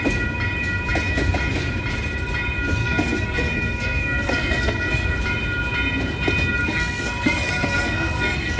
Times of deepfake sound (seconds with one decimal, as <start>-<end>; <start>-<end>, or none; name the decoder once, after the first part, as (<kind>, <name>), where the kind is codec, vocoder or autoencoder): 2.8-5.2 (codec, SNAC); 6.6-8.6